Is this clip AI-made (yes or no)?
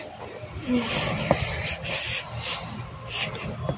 no